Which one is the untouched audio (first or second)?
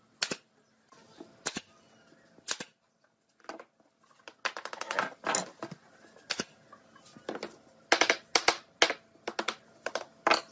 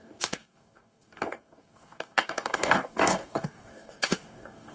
first